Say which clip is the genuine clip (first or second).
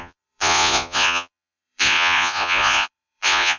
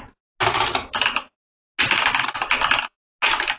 second